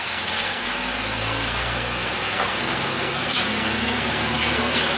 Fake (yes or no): yes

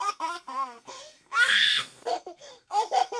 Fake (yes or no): yes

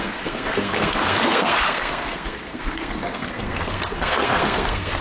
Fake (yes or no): yes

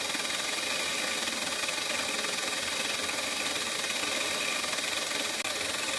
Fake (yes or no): no